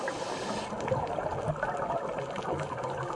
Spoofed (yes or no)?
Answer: no